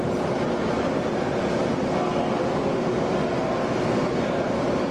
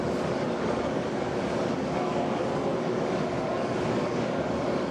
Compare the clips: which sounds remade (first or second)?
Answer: second